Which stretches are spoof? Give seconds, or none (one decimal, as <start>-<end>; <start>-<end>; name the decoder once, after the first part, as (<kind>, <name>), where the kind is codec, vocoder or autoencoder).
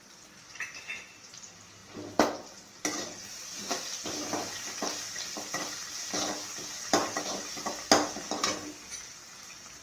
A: none